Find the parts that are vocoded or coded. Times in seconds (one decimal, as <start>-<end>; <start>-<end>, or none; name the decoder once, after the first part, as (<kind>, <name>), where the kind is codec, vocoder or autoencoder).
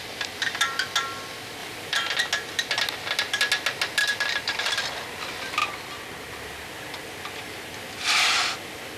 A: 1.6-2.2 (vocoder, BigVGAN v2); 4.0-4.8